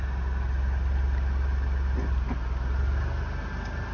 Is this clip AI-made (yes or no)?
no